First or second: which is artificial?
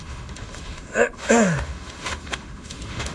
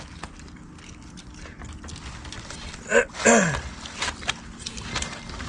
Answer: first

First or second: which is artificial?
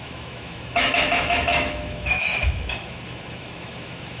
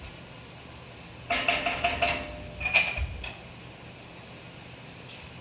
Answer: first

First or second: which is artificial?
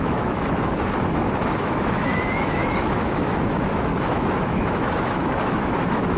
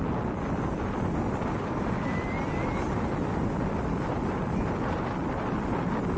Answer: first